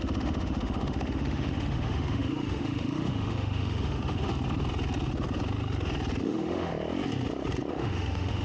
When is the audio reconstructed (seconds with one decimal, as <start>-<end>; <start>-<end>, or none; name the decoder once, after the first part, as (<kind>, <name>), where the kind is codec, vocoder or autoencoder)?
0.0-4.3 (autoencoder, DAC-VAE); 6.2-6.7; 7.7-8.4